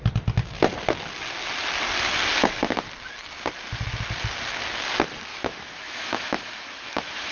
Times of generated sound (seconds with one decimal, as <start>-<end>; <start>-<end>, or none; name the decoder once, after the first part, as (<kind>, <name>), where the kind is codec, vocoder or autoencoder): 5.3-7.3 (autoencoder, DAC-VAE)